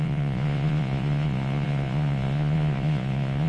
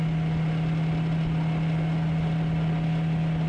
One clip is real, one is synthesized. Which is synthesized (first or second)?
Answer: first